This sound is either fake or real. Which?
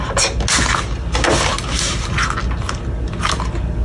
real